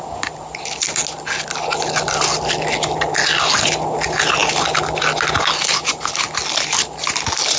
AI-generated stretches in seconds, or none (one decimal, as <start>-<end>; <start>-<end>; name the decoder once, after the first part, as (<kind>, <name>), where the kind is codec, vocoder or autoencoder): none